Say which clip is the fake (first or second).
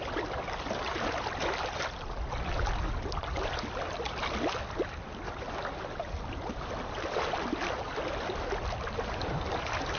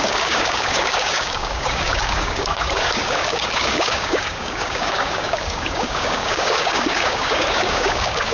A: second